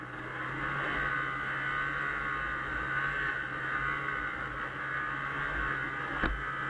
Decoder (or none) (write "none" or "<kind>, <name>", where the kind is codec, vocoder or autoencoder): none